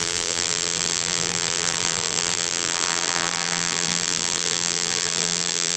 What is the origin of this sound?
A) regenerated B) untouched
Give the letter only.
A